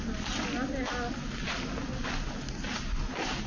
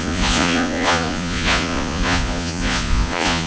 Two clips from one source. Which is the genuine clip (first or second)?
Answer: first